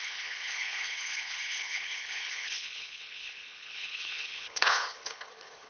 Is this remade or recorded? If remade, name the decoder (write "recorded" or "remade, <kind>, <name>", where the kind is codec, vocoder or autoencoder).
remade, codec, HILCodec